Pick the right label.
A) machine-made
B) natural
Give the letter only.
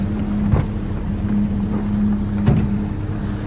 B